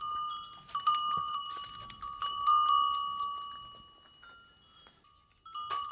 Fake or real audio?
real